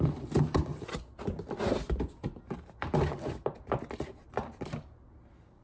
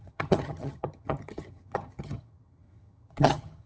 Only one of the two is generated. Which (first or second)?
second